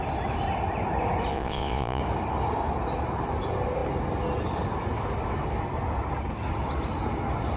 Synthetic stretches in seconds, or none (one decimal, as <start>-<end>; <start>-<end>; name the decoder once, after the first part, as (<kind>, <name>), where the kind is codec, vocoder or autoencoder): 1.3-2.0 (vocoder, Vocos)

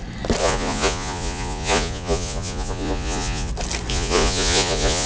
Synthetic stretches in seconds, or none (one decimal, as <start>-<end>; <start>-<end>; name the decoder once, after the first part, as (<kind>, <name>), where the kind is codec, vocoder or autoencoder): 0.4-3.5 (vocoder, Vocos); 3.9-5.1